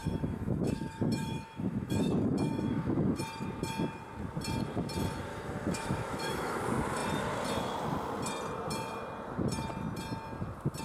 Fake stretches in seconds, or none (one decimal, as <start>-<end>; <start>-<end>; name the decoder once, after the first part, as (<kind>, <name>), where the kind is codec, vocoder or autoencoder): 0.0-3.2 (autoencoder, DAC-VAE); 5.3-6.6

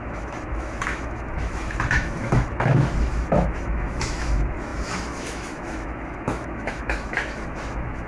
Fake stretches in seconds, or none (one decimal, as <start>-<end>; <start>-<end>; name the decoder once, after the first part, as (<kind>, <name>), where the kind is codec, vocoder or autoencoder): 0.0-8.1 (autoencoder, DAC-VAE)